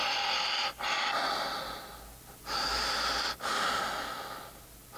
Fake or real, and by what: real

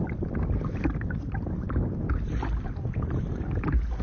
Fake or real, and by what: real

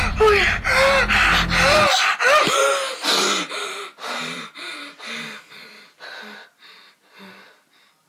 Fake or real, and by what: real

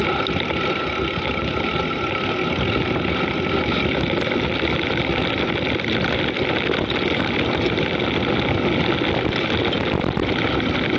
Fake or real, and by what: real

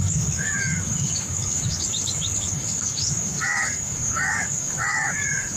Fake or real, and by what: fake, codec, DAC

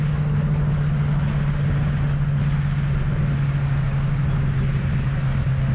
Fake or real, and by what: real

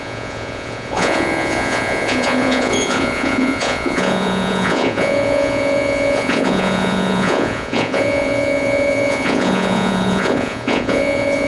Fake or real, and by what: fake, vocoder, Vocos